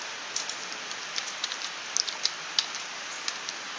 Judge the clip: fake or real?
fake